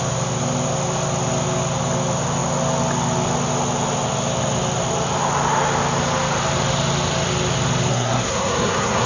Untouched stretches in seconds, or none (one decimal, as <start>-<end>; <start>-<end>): 0.0-7.9